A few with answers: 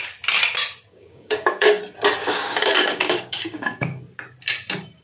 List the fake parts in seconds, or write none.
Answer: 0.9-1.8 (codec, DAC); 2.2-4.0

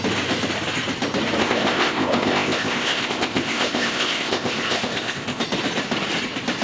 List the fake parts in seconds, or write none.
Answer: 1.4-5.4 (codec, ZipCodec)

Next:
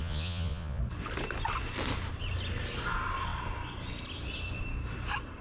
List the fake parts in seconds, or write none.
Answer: 0.0-0.8 (vocoder, Vocos)

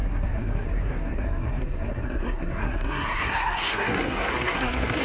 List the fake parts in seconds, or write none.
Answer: 0.0-5.0 (codec, SNAC)